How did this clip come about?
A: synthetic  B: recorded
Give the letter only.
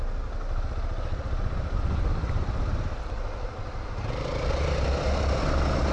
B